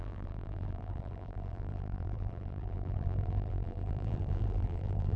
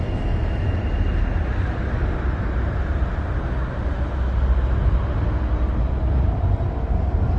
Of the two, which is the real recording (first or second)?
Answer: second